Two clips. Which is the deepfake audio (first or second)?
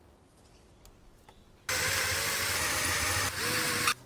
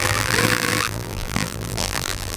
second